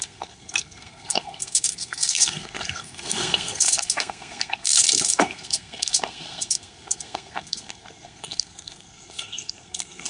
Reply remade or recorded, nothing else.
remade